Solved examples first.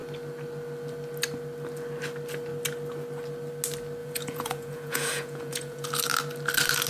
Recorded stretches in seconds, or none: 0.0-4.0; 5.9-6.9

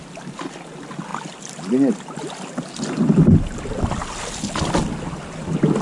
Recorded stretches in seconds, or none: 0.0-5.8